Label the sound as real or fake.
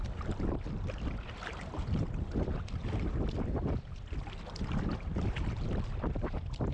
fake